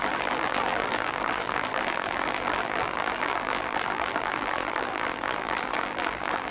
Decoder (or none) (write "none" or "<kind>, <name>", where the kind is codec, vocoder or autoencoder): vocoder, BigVGAN v2